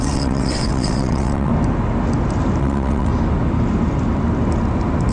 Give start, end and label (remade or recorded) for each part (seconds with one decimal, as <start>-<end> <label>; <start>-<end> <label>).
0.0-1.5 remade; 1.5-2.6 recorded; 2.6-3.1 remade; 3.1-5.1 recorded